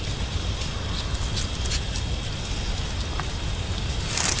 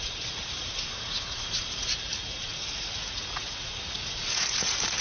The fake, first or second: second